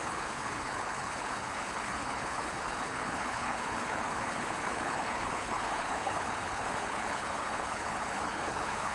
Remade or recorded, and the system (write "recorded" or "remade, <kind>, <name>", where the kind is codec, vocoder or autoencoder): remade, codec, HILCodec